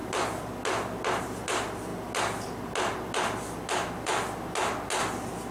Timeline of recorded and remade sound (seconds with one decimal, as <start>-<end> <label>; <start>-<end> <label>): 0.0-1.2 recorded; 1.2-1.9 remade; 1.9-5.5 recorded